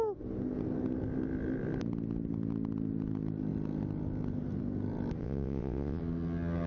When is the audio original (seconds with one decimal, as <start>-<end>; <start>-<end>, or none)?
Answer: 0.0-5.2; 6.0-6.7